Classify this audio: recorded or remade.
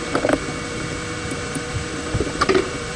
remade